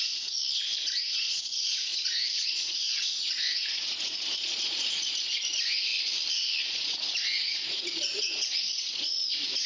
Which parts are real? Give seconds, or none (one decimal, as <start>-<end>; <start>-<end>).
0.4-1.0; 5.9-6.6